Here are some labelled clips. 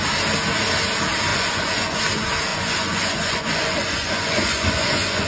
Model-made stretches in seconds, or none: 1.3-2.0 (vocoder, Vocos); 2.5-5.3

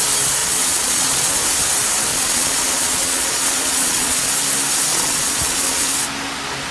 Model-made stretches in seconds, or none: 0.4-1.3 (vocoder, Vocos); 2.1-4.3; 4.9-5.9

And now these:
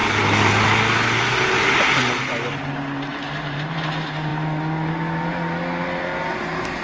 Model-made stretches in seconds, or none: none

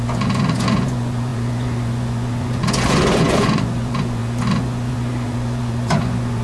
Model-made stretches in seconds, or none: 0.0-6.4 (vocoder, Vocos)

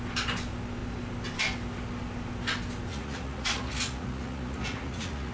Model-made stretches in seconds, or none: 2.9-5.3 (vocoder, Vocos)

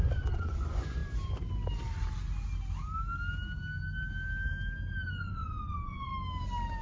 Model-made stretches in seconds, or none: 0.0-1.0 (vocoder, Vocos); 5.1-6.1

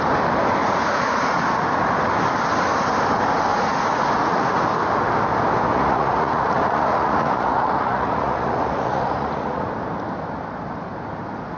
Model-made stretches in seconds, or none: 0.6-1.6 (vocoder, Vocos); 3.5-4.6; 5.7-9.7

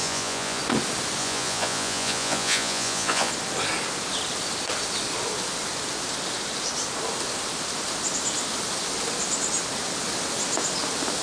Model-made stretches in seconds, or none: 0.0-0.6 (vocoder, Vocos); 1.2-3.3